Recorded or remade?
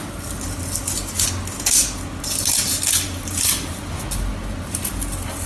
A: recorded